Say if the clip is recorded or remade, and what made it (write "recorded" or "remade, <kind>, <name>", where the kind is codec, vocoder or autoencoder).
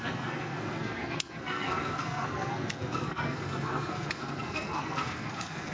remade, codec, SNAC